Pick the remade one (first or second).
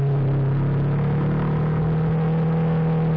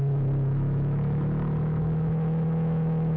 second